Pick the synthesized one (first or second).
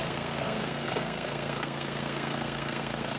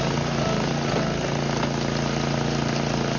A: first